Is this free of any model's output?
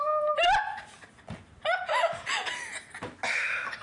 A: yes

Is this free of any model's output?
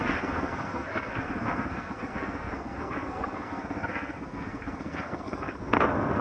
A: no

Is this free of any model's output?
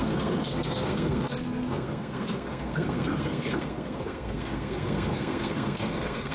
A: no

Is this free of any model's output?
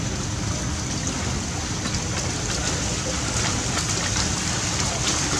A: yes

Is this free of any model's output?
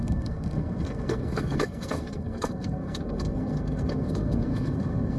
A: no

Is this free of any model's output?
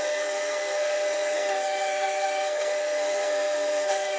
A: no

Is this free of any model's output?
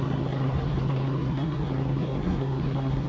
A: no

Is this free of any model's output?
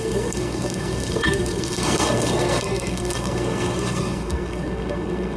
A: no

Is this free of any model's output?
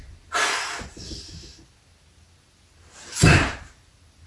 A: yes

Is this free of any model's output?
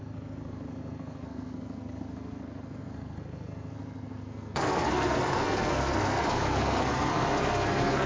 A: no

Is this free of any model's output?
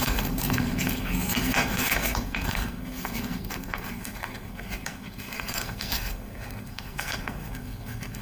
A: no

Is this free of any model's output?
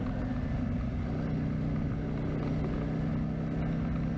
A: yes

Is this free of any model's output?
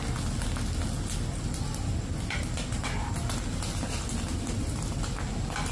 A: yes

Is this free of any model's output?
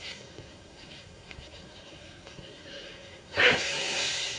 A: no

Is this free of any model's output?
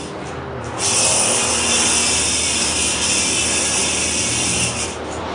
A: yes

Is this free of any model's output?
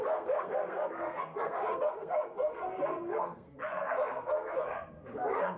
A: no